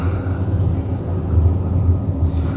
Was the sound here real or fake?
real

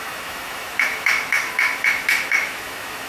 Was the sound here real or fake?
fake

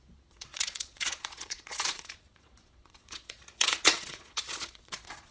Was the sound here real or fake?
fake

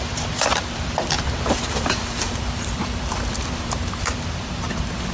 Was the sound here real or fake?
fake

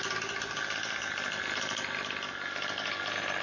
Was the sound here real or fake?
real